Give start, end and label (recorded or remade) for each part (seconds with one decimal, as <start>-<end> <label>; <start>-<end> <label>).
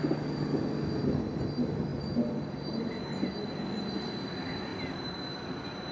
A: 0.0-5.9 recorded